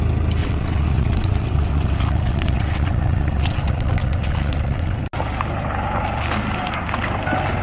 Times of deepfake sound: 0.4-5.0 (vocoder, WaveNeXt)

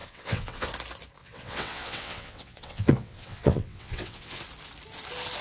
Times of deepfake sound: 0.0-0.7 (vocoder, WaveNeXt); 1.2-4.4

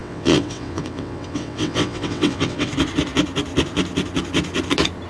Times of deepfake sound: 0.0-2.7 (vocoder, WaveNeXt)

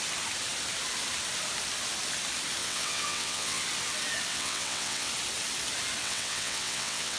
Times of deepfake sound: 2.6-3.6 (vocoder, WaveNeXt); 4.3-5.1; 6.0-7.2

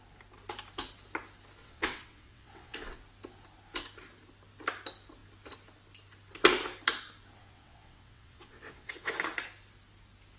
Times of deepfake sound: 1.6-3.0 (vocoder, WaveNeXt); 7.4-9.1